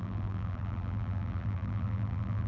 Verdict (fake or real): fake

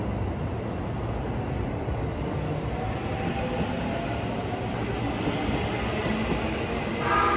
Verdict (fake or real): real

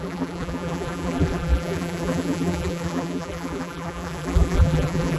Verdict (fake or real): fake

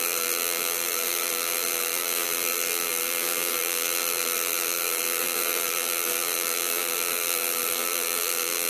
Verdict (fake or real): fake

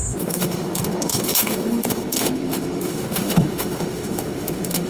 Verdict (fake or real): fake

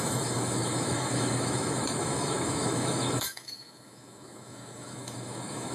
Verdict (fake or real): fake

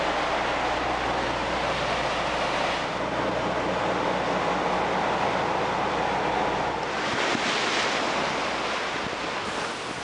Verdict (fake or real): real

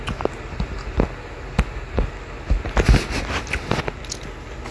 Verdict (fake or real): real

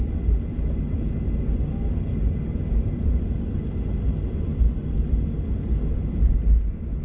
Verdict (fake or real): real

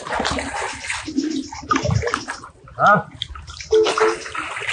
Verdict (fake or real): real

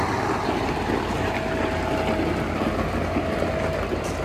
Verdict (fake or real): real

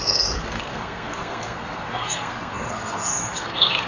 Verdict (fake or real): fake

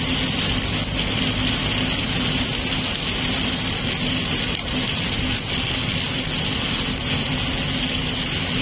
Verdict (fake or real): real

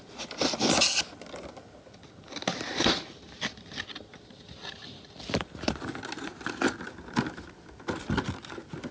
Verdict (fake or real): real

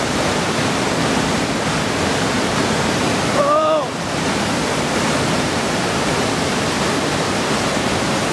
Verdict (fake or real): fake